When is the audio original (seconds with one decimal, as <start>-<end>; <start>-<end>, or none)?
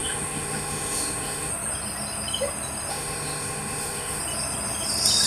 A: 1.5-2.9; 4.2-5.3